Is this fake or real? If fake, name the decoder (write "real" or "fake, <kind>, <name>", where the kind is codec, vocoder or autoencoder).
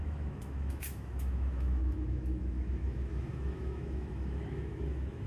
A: fake, autoencoder, DAC-VAE